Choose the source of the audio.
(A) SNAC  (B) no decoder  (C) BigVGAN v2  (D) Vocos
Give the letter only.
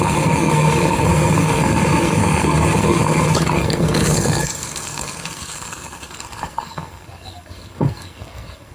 A